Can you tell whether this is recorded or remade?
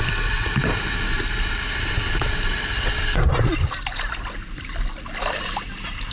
recorded